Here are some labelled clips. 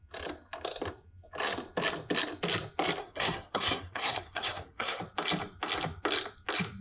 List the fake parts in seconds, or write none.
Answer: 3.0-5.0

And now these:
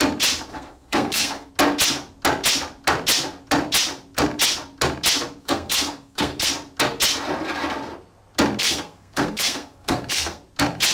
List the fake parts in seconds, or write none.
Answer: 0.5-1.5; 5.4-6.5; 8.6-10.4

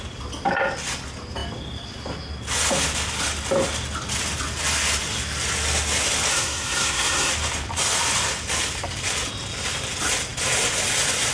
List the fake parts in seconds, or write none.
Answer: 6.3-7.3

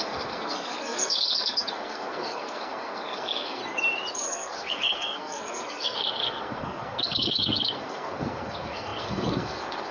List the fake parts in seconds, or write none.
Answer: 0.0-3.6; 4.1-9.9

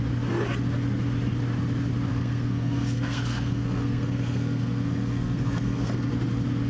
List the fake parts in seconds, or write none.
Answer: 2.1-6.1

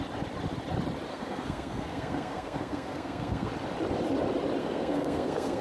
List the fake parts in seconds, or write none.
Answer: 1.1-3.5; 4.6-5.6

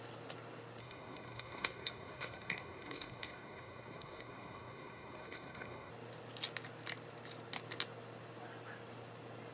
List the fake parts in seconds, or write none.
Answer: 0.8-5.9

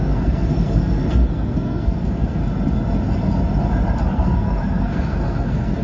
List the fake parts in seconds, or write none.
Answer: 0.0-2.4; 4.0-5.8